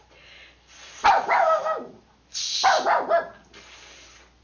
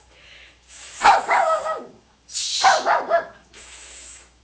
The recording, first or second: first